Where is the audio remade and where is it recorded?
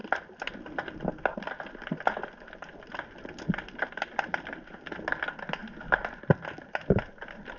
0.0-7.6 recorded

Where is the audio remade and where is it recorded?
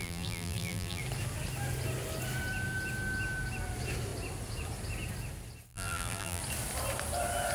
0.0-1.0 remade; 1.0-5.7 recorded; 5.7-6.4 remade; 6.4-7.5 recorded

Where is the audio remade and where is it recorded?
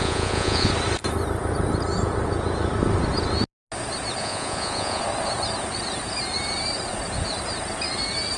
0.0-0.7 remade; 0.7-4.2 recorded; 4.2-5.0 remade; 5.0-8.4 recorded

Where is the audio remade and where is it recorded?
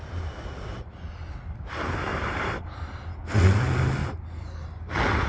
0.0-2.1 recorded; 2.1-2.6 remade; 2.6-5.3 recorded